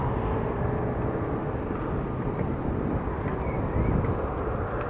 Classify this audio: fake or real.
real